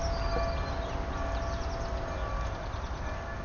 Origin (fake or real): real